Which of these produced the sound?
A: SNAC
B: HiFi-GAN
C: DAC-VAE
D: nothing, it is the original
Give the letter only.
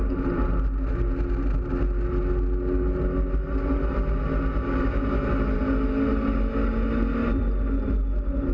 D